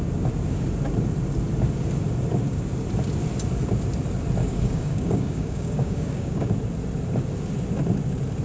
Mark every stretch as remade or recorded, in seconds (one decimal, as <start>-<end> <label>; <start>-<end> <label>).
0.0-4.4 recorded; 4.4-6.5 remade; 6.5-8.4 recorded